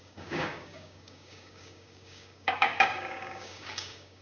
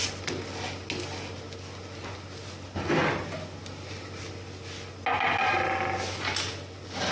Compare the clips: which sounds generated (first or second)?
first